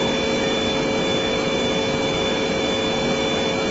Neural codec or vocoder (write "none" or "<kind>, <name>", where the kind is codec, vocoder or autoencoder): none